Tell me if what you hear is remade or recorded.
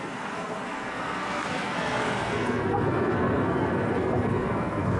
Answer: remade